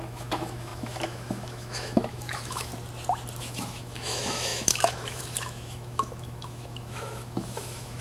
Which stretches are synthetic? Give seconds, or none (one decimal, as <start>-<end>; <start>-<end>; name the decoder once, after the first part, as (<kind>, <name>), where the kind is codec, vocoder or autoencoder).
0.0-2.7 (autoencoder, DAC-VAE); 3.4-8.0